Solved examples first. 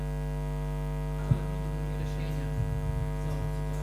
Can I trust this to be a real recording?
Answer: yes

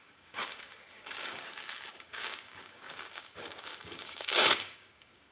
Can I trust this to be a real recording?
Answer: no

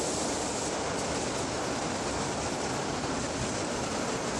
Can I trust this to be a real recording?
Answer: yes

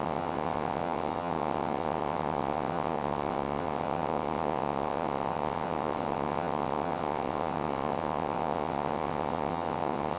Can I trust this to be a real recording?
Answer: no